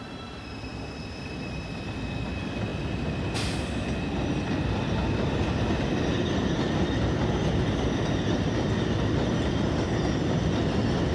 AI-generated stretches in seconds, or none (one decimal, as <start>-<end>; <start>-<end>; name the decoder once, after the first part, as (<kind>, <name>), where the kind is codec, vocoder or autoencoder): none